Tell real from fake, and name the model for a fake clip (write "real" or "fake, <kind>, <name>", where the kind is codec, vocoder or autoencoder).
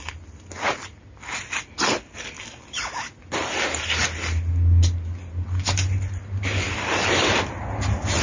real